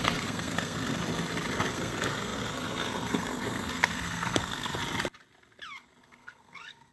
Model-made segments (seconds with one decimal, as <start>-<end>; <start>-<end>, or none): 0.0-1.0; 1.7-4.8; 6.0-6.9